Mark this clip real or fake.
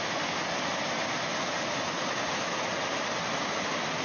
real